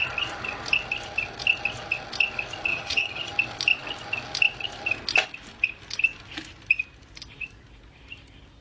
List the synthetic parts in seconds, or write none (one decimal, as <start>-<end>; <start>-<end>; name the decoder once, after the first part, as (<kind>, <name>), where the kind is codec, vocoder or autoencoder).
2.7-3.3 (vocoder, HiFi-GAN)